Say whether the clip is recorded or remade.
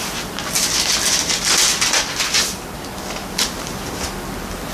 recorded